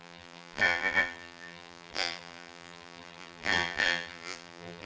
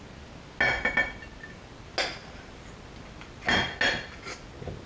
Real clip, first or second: second